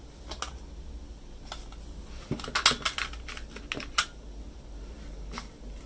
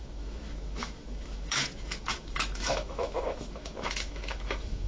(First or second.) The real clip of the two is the first